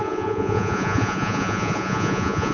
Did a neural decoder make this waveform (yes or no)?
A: yes